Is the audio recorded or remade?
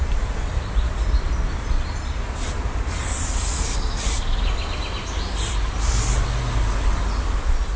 recorded